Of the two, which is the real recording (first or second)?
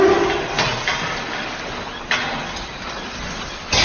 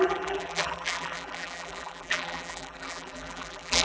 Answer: first